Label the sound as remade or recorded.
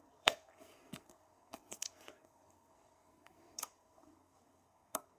remade